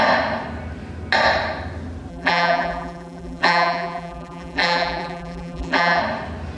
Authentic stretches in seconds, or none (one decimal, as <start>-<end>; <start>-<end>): 0.0-2.1; 6.0-6.6